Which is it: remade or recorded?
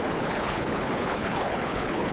remade